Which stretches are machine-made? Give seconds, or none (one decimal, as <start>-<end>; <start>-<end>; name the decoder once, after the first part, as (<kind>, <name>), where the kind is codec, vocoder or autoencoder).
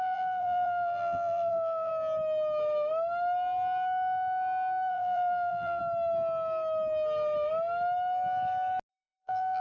0.0-1.9 (vocoder, BigVGAN v2); 4.9-5.8; 8.9-9.6